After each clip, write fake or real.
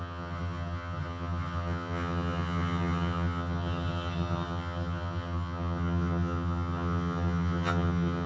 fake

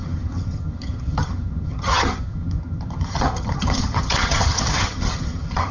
fake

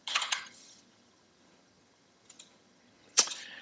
fake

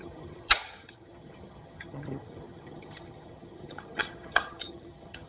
fake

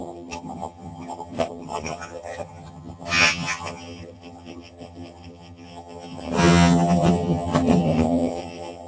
fake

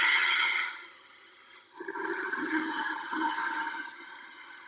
fake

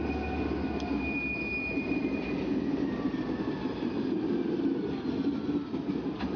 real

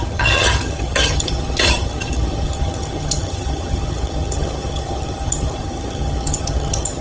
fake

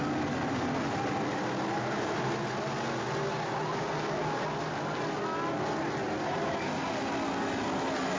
real